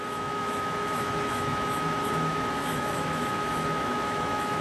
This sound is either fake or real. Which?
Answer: fake